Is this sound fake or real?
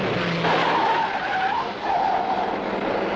real